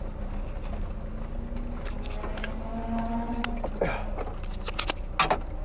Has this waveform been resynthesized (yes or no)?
no